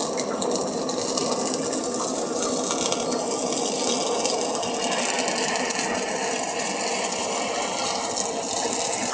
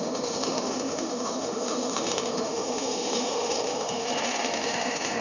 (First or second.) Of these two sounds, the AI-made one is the second